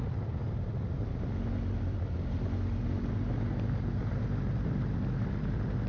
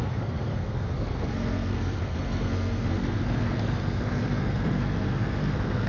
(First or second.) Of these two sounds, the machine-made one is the second